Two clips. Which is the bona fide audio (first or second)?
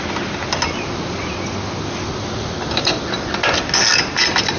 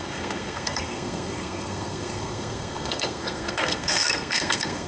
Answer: first